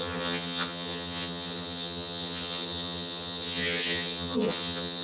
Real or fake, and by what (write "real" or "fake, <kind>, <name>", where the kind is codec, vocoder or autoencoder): fake, vocoder, HiFi-GAN